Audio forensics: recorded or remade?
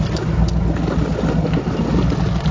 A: recorded